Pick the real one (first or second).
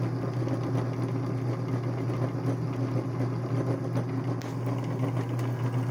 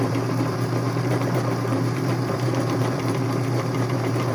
first